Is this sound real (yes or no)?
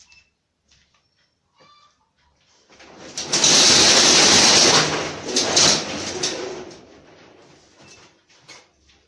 yes